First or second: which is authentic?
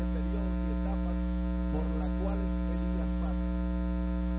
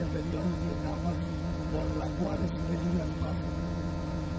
first